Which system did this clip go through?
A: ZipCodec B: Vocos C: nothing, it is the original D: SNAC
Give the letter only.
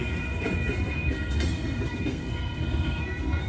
D